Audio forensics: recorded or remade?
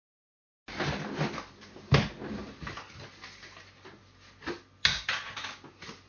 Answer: recorded